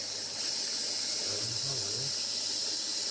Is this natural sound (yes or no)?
yes